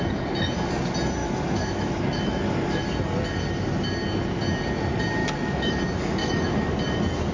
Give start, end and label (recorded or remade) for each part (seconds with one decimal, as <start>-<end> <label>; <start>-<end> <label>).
0.0-1.2 recorded; 1.2-2.8 remade; 2.8-5.2 recorded; 5.2-5.8 remade; 5.8-6.2 recorded; 6.2-6.7 remade; 6.7-7.3 recorded